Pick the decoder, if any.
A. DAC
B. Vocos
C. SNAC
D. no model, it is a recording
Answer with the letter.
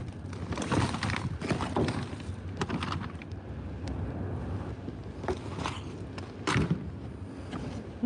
D